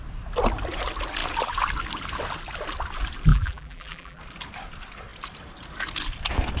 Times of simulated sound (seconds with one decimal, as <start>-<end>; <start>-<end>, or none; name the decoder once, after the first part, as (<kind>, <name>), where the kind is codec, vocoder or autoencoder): 3.3-4.2 (vocoder, BigVGAN v2)